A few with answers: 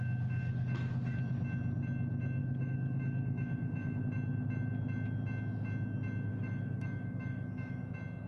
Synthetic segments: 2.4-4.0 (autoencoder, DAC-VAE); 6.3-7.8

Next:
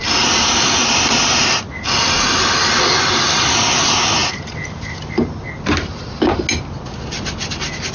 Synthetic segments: none

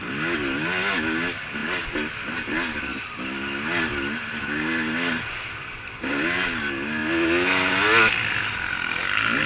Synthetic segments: none

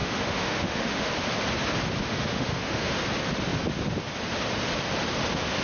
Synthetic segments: 0.0-1.1 (autoencoder, DAC-VAE); 2.0-2.9